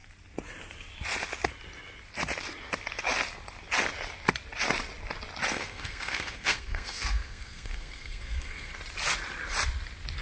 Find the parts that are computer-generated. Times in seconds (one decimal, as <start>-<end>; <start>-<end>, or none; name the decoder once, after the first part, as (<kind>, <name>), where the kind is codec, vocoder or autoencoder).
5.5-8.7 (codec, SNAC)